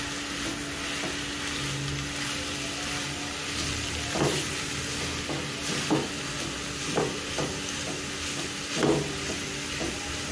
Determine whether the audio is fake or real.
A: real